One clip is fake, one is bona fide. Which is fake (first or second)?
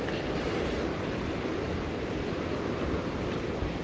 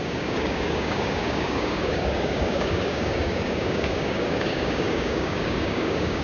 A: second